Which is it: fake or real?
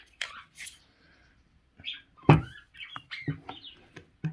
fake